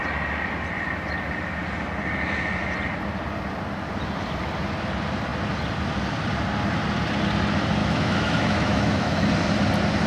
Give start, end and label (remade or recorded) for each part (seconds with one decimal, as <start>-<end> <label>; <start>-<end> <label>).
0.0-7.8 recorded; 7.8-9.3 remade; 9.3-10.1 recorded